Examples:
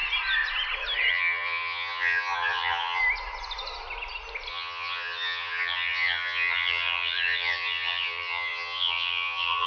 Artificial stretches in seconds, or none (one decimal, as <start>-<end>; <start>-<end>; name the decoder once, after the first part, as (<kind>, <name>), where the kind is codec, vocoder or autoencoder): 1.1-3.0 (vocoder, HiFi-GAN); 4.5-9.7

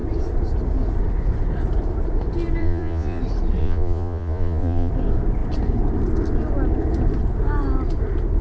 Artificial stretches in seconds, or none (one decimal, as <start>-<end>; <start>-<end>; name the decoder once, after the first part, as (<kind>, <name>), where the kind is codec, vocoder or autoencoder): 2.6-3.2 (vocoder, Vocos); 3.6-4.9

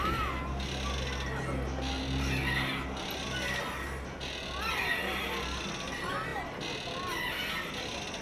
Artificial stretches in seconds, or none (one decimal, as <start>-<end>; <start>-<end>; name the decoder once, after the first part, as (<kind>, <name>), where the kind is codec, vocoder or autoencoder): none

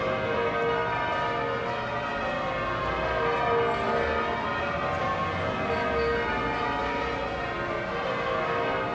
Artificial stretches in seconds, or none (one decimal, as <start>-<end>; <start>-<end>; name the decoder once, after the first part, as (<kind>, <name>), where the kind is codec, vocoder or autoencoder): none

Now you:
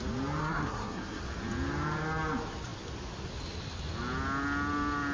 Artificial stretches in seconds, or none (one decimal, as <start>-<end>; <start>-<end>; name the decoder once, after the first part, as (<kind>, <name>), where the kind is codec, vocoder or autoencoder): 0.4-1.2 (codec, SNAC)

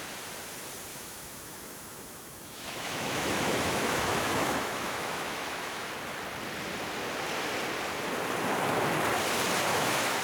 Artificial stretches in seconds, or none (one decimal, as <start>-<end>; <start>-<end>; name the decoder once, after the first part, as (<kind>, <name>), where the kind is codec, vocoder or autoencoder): 0.9-5.9 (autoencoder, DAC-VAE); 9.7-10.2